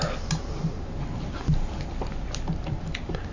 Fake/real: real